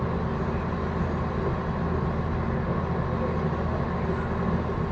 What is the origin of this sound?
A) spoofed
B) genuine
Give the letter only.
B